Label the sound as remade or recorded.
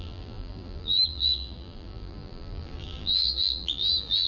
remade